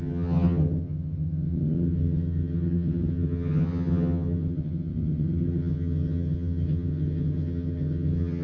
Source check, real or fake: fake